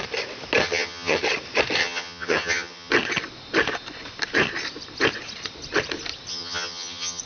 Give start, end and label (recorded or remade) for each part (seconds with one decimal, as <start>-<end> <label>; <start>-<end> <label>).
0.0-0.6 recorded; 0.6-1.2 remade; 1.2-1.8 recorded; 1.8-2.9 remade; 2.9-6.3 recorded; 6.3-7.2 remade